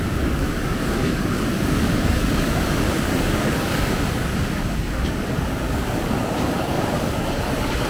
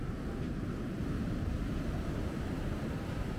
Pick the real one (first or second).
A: second